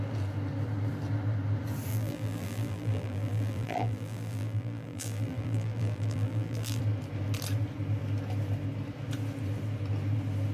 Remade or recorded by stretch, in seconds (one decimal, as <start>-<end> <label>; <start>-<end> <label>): 0.0-1.9 recorded; 1.9-6.8 remade; 6.8-10.5 recorded